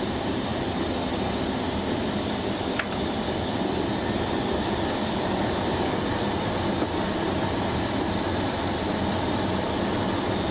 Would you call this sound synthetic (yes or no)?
no